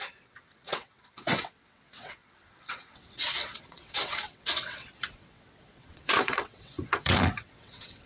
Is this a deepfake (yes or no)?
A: yes